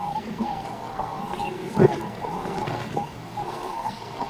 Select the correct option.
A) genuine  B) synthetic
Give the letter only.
B